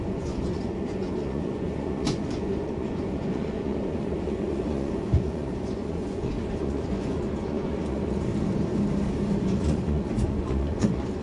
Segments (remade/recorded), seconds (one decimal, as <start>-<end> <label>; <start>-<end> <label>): 0.0-8.3 remade; 8.3-9.4 recorded; 9.4-11.2 remade